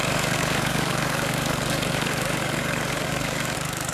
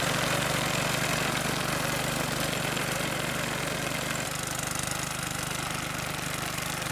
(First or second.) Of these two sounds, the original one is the second